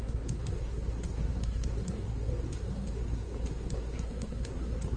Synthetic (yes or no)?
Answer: yes